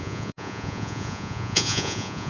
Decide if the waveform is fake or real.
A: fake